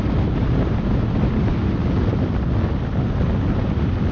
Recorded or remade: recorded